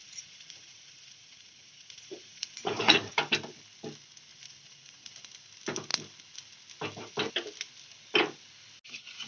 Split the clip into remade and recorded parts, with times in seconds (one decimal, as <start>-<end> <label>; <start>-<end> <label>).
0.0-3.1 remade; 3.1-4.3 recorded; 4.3-5.2 remade; 5.2-9.3 recorded